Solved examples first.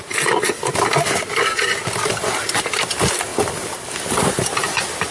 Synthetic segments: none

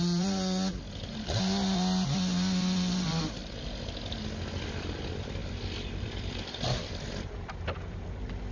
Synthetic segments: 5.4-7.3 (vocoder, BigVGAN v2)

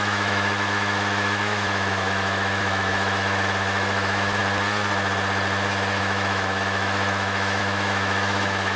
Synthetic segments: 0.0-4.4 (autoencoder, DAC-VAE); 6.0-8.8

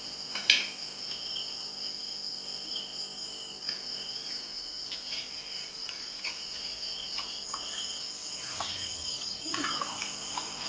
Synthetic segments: 5.6-6.2 (codec, DAC); 8.9-9.5